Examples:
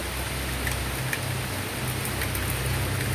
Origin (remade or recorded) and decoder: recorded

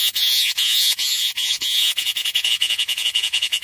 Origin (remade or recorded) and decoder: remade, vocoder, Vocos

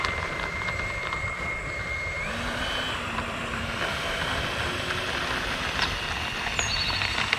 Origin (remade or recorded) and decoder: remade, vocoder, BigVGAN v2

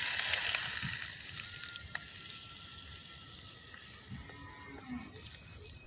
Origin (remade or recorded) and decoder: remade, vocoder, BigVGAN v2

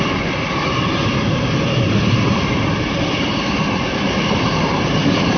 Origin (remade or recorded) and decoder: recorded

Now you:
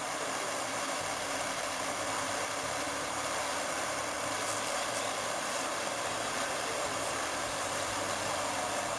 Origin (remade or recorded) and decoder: remade, vocoder, BigVGAN v2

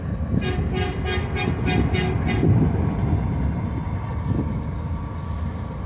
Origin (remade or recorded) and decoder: recorded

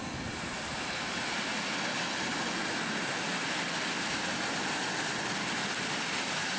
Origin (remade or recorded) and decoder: recorded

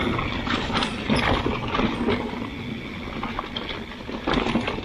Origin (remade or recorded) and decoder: recorded